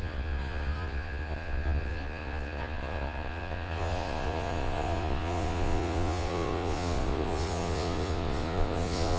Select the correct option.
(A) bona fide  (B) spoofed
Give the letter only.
B